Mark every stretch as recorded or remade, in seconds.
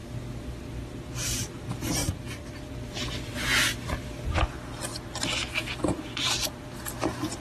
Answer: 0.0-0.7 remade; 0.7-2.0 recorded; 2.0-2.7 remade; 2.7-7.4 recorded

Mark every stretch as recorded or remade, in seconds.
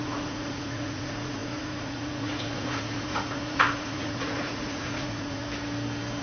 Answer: 0.0-5.4 remade; 5.4-6.2 recorded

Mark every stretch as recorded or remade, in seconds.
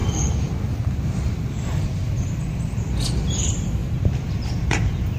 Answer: 0.0-5.2 recorded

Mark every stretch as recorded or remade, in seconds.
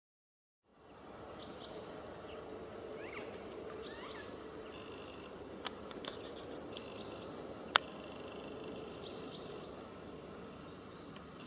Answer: 0.0-11.5 recorded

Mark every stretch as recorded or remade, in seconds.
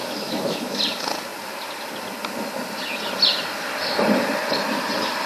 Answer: 0.0-0.8 remade; 0.8-5.3 recorded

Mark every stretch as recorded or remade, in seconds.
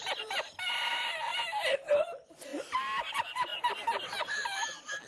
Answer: 0.0-1.3 remade; 1.3-2.0 recorded; 2.0-2.5 remade; 2.5-3.1 recorded; 3.1-3.5 remade; 3.5-4.5 recorded; 4.5-5.1 remade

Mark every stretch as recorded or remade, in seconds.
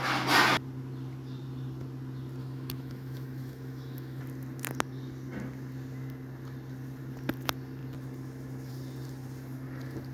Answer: 0.0-2.4 recorded; 2.4-4.2 remade; 4.2-10.1 recorded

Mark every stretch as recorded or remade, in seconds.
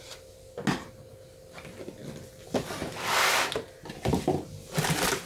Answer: 0.0-5.3 recorded